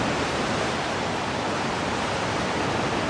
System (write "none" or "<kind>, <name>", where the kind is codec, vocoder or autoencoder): none